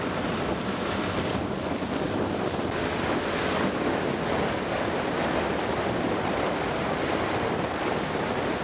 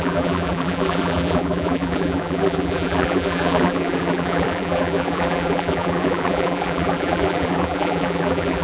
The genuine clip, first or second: first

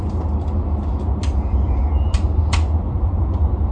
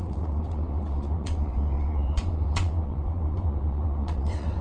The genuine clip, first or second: first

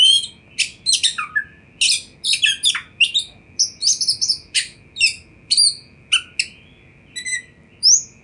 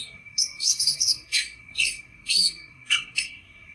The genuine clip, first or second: first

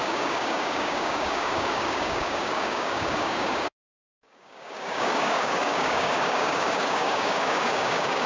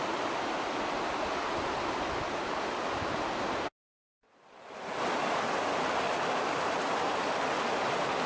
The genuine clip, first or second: second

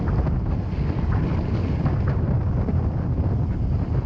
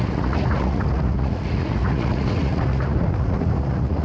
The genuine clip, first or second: first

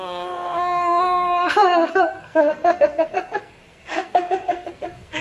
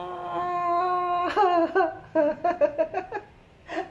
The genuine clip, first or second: second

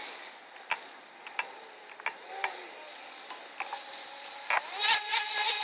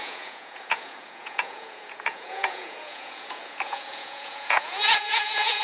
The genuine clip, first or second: first